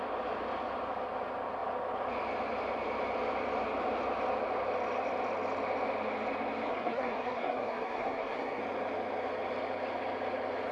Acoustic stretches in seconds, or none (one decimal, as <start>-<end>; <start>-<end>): 0.0-6.7; 8.6-10.7